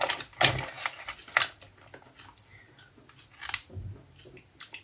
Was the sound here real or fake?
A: real